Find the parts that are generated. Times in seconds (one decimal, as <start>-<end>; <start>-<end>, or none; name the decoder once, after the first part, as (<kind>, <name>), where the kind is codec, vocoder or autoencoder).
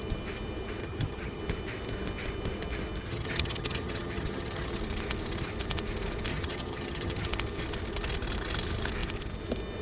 0.8-1.4 (vocoder, HiFi-GAN); 3.1-4.8; 6.3-7.3